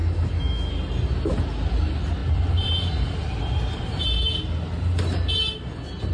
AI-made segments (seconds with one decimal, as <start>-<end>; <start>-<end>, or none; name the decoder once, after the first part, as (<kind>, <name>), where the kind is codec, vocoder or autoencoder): 0.0-0.7 (autoencoder, DAC-VAE)